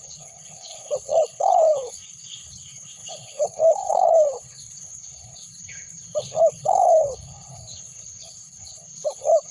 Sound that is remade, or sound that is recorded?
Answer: remade